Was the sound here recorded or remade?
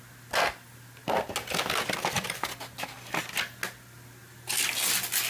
recorded